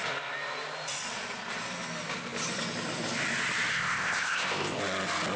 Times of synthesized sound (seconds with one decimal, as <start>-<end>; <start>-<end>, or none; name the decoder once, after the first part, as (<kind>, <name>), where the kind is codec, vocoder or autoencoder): 3.7-4.8 (codec, ZipCodec)